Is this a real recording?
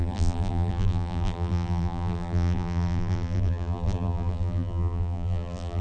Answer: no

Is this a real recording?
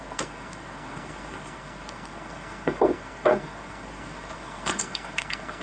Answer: no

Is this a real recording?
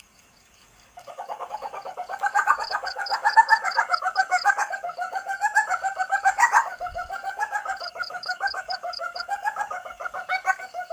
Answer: no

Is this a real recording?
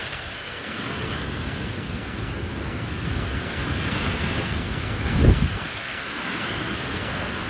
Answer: no